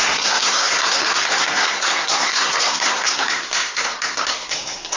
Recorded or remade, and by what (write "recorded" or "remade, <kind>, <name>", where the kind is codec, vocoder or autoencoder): remade, codec, SNAC